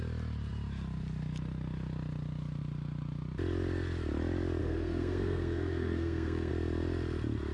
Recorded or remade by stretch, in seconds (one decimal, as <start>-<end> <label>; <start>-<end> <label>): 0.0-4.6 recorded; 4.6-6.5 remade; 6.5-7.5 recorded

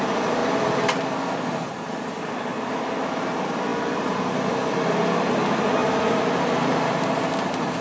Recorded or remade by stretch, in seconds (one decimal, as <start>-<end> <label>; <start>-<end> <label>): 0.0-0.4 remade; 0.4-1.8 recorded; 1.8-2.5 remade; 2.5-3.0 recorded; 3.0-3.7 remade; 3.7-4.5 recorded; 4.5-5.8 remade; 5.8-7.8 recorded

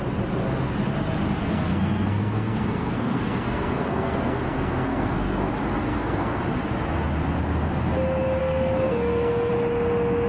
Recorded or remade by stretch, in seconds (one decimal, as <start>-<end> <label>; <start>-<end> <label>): 0.0-1.4 recorded; 1.4-5.5 remade; 5.5-5.9 recorded; 5.9-6.4 remade; 6.4-8.4 recorded; 8.4-9.5 remade; 9.5-10.3 recorded

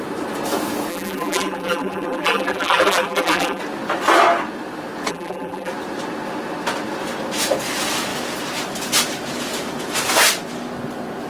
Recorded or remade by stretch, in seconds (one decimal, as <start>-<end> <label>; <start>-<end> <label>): 0.0-0.9 recorded; 0.9-3.6 remade; 3.6-5.1 recorded; 5.1-5.7 remade; 5.7-11.3 recorded

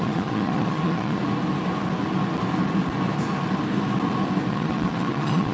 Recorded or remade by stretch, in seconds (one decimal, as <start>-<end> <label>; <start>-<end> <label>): 0.0-1.2 remade; 1.2-4.5 recorded; 4.5-5.5 remade

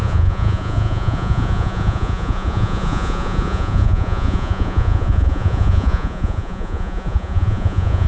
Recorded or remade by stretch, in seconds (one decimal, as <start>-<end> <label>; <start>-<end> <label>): 0.0-8.1 remade

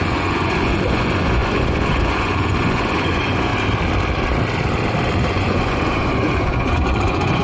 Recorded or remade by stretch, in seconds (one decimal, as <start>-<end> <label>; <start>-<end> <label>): 0.0-3.5 remade; 3.5-5.3 recorded; 5.3-7.4 remade

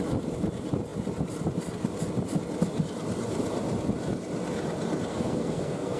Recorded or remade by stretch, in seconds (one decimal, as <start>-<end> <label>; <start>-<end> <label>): 0.0-5.1 recorded; 5.1-6.0 remade